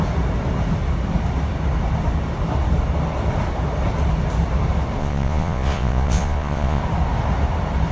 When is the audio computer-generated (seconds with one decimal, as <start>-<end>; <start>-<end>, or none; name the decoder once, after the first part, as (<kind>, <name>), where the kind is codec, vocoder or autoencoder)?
5.0-6.8 (vocoder, Vocos)